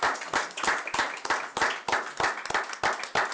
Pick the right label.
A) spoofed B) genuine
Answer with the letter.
B